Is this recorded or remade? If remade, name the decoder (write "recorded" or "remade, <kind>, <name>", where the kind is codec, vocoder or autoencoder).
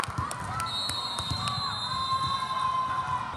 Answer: recorded